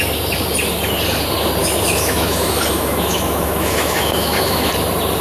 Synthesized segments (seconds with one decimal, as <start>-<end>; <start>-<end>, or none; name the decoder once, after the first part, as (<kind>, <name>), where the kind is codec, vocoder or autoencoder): 1.6-4.7 (autoencoder, DAC-VAE)